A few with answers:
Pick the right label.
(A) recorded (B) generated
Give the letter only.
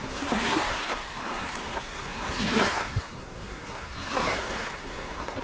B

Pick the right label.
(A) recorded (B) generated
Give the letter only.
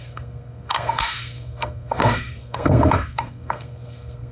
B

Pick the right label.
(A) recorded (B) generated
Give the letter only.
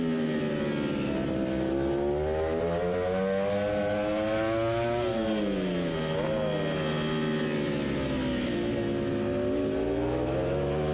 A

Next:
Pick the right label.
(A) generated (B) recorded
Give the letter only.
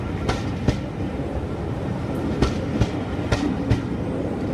B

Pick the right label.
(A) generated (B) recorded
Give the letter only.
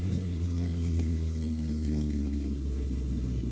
A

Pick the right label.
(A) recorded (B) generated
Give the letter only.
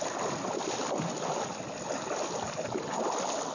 A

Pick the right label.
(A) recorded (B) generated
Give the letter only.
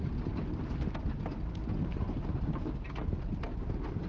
A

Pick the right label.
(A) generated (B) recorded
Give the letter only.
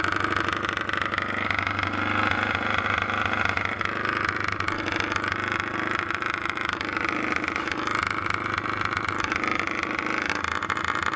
B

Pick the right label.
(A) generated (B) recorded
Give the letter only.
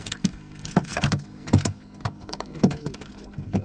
A